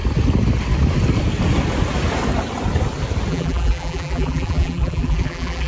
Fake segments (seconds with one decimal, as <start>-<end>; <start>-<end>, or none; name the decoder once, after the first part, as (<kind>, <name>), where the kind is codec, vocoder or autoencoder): 3.3-5.7 (vocoder, BigVGAN v2)